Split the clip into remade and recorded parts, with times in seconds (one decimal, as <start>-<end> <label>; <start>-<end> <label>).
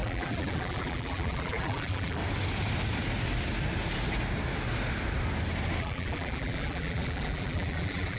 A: 0.0-2.2 remade; 2.2-5.8 recorded; 5.8-8.2 remade